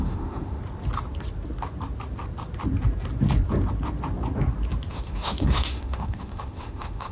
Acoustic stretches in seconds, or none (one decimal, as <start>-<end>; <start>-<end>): 0.6-4.9